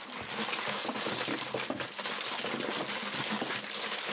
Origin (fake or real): real